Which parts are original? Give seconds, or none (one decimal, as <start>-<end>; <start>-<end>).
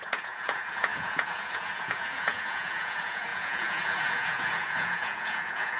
none